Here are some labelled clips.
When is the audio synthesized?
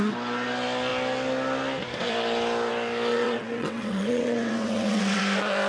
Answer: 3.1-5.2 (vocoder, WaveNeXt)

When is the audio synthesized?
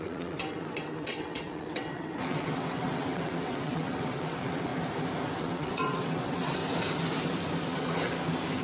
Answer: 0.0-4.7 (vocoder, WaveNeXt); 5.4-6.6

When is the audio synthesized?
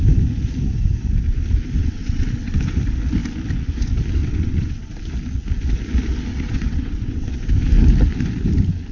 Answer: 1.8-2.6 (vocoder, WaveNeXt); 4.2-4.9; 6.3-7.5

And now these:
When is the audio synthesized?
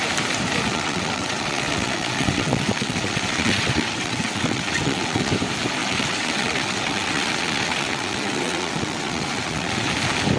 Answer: 0.7-5.3 (vocoder, WaveNeXt); 5.8-9.9